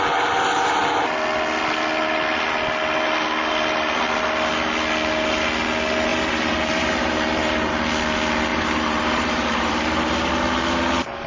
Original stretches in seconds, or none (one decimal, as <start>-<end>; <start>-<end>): 0.0-6.1; 7.7-8.5; 10.3-11.3